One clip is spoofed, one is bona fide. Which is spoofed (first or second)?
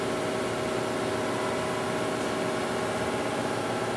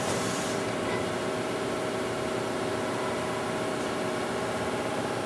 second